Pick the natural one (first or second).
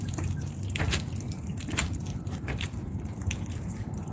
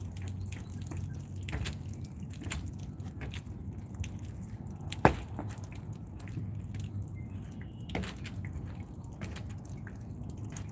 second